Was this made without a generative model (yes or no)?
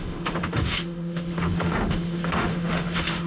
no